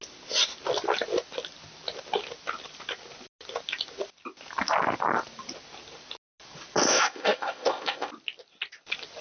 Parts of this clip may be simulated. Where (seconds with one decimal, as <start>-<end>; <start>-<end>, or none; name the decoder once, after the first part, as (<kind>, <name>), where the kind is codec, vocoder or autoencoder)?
6.9-8.1 (codec, ZipCodec)